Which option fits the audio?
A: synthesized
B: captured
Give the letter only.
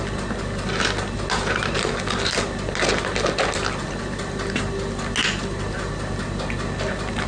B